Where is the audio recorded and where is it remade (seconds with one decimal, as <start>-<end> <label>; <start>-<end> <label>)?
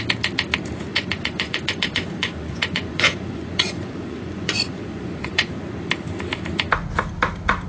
0.0-0.9 recorded; 0.9-5.5 remade; 5.5-7.7 recorded